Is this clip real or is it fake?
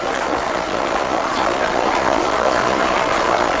fake